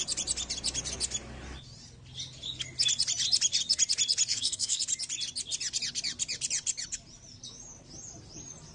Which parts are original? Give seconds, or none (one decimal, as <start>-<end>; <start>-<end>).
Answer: 0.0-4.3; 4.8-8.7